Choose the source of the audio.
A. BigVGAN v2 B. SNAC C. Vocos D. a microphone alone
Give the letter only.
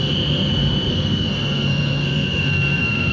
B